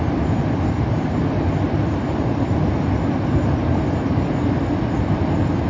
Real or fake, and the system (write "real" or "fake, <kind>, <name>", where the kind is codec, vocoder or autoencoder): real